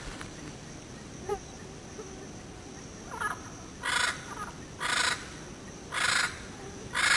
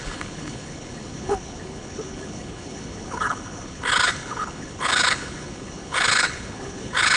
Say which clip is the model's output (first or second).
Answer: second